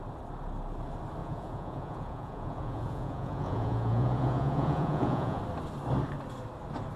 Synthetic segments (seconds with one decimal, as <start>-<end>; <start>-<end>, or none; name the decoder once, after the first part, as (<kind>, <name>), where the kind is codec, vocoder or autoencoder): 1.2-5.4 (vocoder, Vocos)